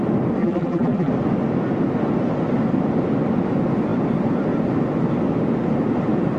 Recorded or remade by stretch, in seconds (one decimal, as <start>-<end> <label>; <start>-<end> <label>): 0.0-0.4 recorded; 0.4-1.1 remade; 1.1-6.4 recorded